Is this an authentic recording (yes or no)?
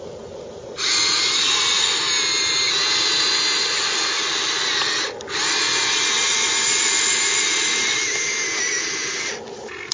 yes